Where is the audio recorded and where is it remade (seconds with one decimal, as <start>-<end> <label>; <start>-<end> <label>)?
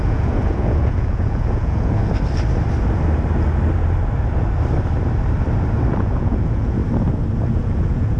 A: 0.0-2.0 remade; 2.0-5.9 recorded; 5.9-6.8 remade; 6.8-7.5 recorded; 7.5-8.2 remade